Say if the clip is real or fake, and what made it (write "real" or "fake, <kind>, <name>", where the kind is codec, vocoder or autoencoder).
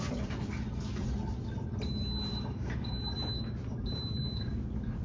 real